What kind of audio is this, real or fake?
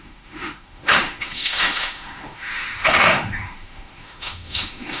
fake